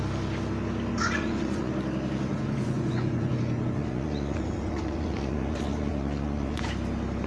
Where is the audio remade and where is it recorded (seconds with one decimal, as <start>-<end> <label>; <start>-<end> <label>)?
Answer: 0.0-1.0 recorded; 1.0-1.7 remade; 1.7-2.3 recorded; 2.3-6.7 remade; 6.7-7.3 recorded